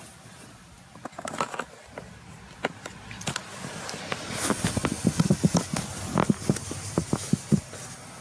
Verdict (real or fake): real